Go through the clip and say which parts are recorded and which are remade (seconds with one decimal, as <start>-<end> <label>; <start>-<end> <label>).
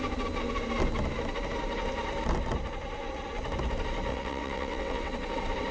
0.0-4.1 recorded; 4.1-5.1 remade; 5.1-5.7 recorded